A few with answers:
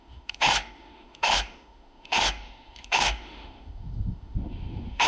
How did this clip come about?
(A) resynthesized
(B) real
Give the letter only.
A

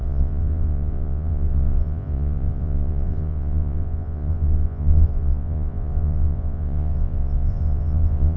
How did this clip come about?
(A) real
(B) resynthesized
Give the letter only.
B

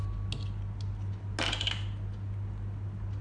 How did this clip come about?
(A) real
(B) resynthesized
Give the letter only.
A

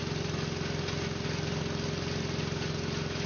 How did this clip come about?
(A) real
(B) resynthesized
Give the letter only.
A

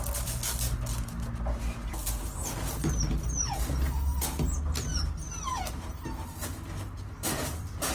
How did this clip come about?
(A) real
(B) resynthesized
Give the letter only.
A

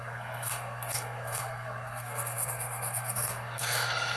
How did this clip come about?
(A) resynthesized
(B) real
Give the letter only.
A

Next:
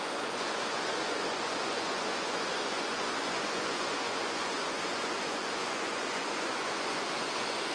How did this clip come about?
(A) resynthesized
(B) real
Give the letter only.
A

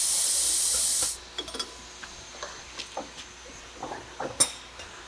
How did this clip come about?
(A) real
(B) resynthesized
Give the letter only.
A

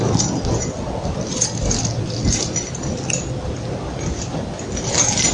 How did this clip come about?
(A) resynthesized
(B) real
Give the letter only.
B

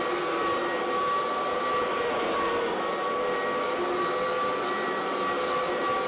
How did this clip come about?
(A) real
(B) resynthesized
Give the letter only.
A